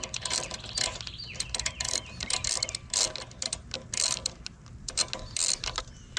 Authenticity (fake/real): real